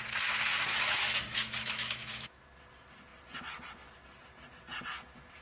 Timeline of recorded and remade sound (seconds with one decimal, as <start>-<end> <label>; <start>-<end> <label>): 0.0-0.7 recorded; 0.7-2.4 remade; 2.4-5.4 recorded